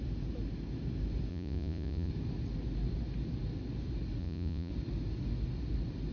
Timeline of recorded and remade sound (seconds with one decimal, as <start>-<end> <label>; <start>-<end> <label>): 0.0-1.3 recorded; 1.3-2.1 remade; 2.1-4.2 recorded; 4.2-4.7 remade; 4.7-6.1 recorded